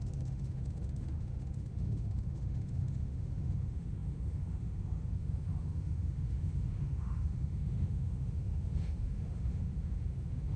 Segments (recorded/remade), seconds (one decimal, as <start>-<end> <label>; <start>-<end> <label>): 0.0-10.6 remade